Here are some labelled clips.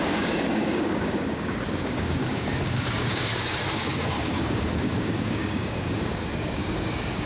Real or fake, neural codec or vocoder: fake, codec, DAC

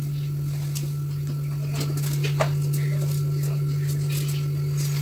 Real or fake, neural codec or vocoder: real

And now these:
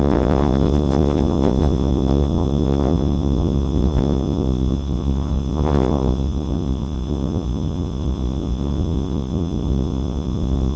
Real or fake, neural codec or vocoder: fake, vocoder, Vocos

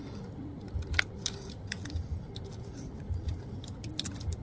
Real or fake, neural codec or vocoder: real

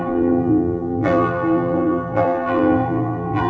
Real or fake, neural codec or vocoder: fake, vocoder, BigVGAN v2